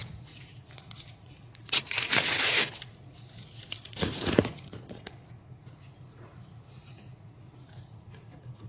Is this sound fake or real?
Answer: fake